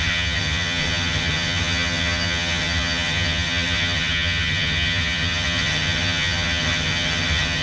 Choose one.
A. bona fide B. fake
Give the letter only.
B